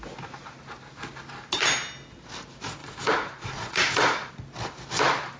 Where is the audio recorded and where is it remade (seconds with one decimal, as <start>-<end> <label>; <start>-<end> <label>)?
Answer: 0.0-2.8 recorded; 2.8-4.3 remade; 4.3-5.4 recorded